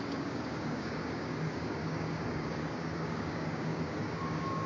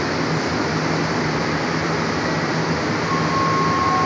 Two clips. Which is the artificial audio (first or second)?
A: first